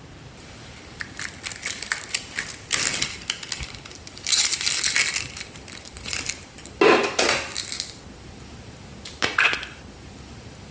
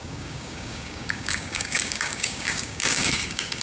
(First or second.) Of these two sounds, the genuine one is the first